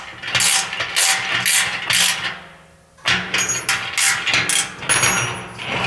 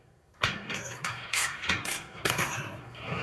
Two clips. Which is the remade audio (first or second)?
second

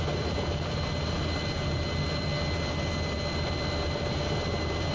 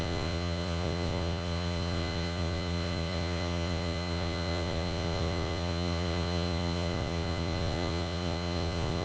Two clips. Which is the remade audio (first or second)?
second